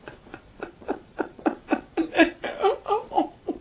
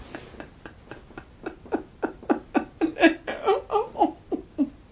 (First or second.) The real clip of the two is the second